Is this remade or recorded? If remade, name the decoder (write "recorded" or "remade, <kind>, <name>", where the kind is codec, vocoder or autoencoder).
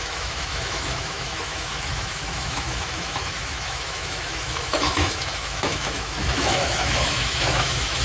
remade, autoencoder, DAC-VAE